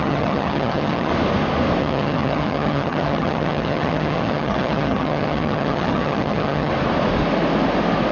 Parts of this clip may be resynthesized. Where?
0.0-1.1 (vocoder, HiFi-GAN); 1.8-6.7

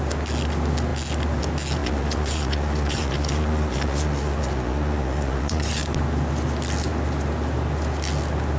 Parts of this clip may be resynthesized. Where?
1.8-5.8 (vocoder, Vocos)

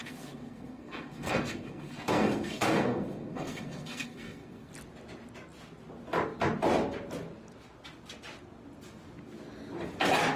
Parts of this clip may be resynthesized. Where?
0.0-4.7 (codec, SNAC)

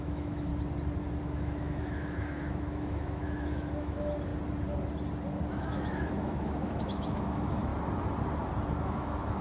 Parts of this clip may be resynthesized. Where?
0.0-0.5 (autoencoder, DAC-VAE); 1.2-4.3; 5.5-7.7; 8.8-9.4

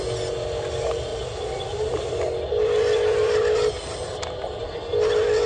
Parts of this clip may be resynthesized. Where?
none

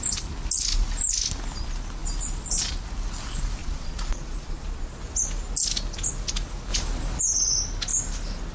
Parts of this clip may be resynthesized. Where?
3.6-5.0 (vocoder, Vocos)